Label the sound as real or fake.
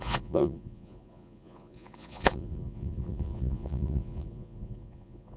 fake